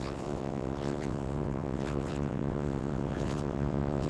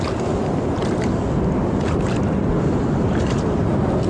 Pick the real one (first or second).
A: second